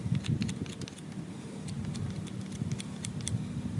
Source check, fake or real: real